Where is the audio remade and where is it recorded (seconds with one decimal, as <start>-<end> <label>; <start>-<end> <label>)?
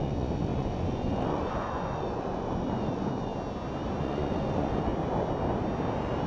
0.0-3.3 remade; 3.3-4.0 recorded; 4.0-4.9 remade; 4.9-6.3 recorded